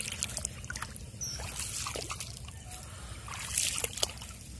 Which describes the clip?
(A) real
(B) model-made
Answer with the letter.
A